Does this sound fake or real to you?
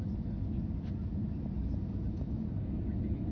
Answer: real